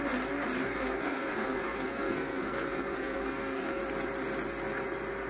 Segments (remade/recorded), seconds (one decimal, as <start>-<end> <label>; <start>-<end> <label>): 0.0-0.6 recorded; 0.6-3.8 remade; 3.8-5.3 recorded